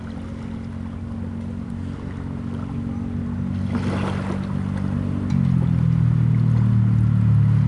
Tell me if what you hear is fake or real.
real